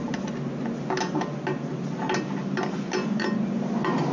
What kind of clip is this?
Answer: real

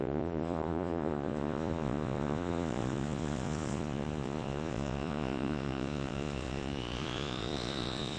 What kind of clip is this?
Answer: fake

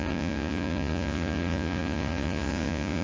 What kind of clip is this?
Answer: fake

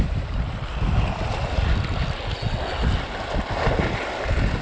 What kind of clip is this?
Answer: real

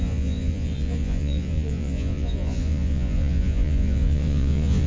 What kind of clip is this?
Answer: fake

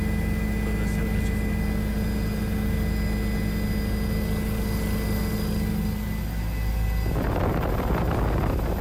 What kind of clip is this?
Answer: real